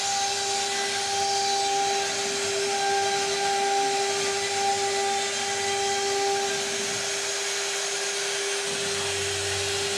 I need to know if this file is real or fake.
real